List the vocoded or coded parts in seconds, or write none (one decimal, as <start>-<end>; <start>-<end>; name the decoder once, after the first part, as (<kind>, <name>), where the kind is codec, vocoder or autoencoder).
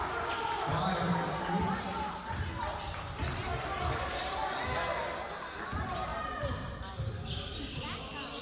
none